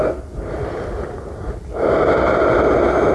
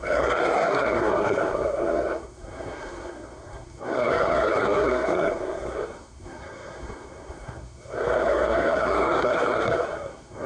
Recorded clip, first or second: first